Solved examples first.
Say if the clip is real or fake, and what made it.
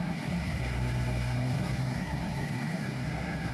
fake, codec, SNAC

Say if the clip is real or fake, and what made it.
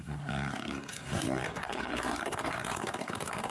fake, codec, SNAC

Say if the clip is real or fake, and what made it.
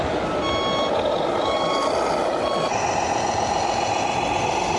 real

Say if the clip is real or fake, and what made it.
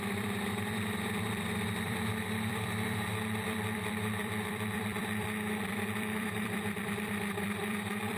fake, vocoder, BigVGAN v2